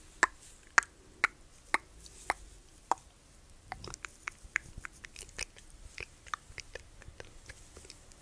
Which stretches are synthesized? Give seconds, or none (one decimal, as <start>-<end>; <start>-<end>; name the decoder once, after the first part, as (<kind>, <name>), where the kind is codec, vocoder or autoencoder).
none